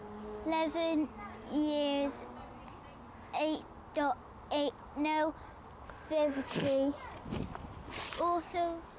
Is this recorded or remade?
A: recorded